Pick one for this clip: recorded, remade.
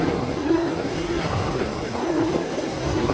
remade